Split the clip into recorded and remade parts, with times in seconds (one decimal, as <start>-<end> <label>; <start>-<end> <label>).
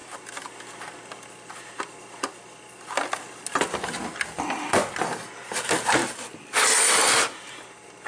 0.0-8.1 recorded